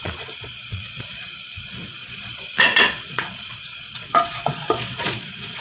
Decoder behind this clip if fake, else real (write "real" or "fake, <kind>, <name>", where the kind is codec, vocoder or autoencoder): fake, vocoder, Vocos